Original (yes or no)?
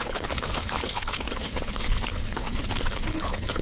no